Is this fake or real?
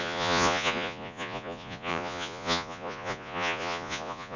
fake